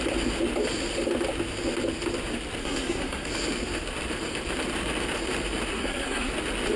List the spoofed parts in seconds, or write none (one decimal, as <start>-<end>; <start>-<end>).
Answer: 2.6-3.3; 5.7-6.3